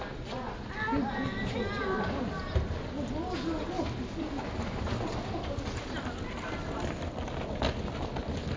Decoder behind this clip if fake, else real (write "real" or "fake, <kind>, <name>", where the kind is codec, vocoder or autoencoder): real